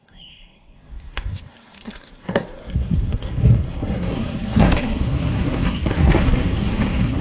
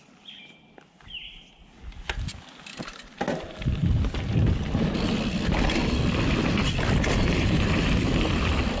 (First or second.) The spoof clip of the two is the first